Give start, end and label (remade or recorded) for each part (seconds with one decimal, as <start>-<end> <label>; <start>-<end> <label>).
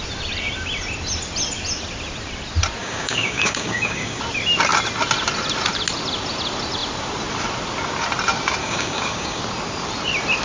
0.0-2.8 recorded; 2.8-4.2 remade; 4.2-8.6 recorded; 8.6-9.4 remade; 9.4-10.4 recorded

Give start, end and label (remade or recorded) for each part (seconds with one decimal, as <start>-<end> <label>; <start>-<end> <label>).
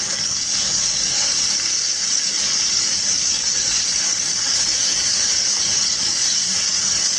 0.0-1.3 remade; 1.3-2.1 recorded; 2.1-7.2 remade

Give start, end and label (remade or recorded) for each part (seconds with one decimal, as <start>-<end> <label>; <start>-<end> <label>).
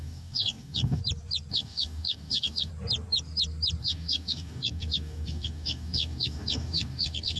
0.0-1.0 remade; 1.0-1.5 recorded; 1.5-2.7 remade; 2.7-3.8 recorded; 3.8-7.4 remade